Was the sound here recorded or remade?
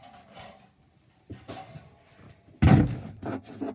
recorded